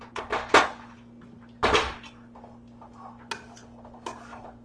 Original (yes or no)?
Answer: yes